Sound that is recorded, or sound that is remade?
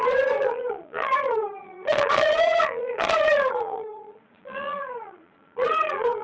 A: remade